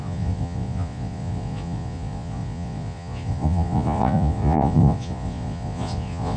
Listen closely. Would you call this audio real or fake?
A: fake